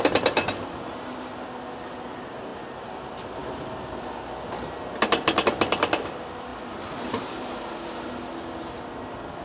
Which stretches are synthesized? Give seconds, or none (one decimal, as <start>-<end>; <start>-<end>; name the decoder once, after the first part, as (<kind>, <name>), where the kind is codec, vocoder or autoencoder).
none